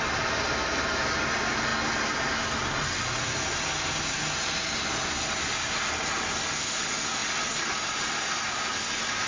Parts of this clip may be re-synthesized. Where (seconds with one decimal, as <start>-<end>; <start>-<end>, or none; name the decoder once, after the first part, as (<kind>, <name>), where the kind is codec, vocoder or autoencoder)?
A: none